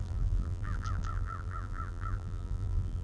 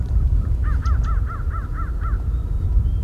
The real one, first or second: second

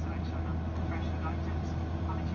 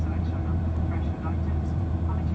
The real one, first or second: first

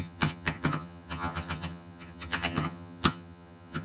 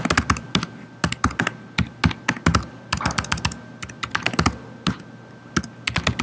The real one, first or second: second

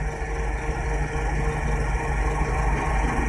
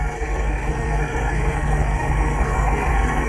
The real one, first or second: first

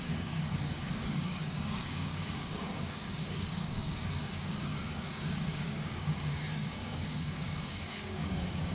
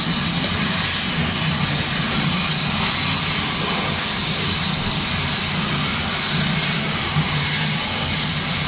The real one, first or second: second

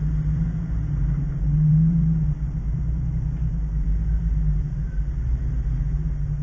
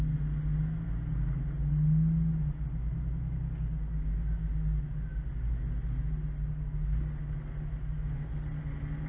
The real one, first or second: second